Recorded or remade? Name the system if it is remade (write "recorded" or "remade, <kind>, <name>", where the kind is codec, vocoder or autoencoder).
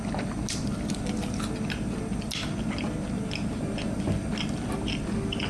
recorded